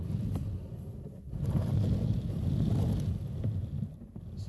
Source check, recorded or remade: recorded